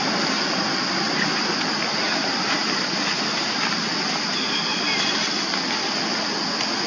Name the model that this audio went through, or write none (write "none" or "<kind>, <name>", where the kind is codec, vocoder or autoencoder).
none